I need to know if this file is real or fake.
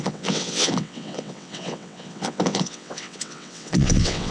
fake